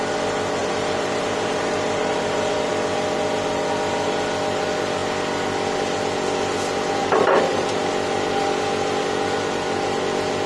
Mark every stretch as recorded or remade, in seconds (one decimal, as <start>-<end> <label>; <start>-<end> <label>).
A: 0.0-0.6 recorded; 0.6-2.7 remade; 2.7-7.0 recorded; 7.0-7.9 remade; 7.9-10.5 recorded